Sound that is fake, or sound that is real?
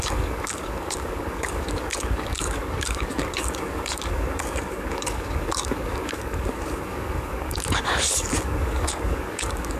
fake